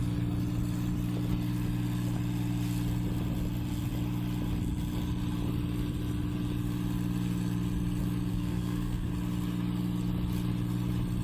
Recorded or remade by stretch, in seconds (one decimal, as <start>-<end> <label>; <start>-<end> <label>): 0.0-8.3 recorded; 8.3-9.1 remade; 9.1-11.2 recorded